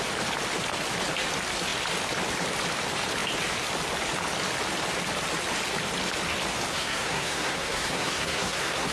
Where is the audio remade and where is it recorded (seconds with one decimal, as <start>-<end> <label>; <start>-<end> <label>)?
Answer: 0.0-6.7 recorded; 6.7-8.9 remade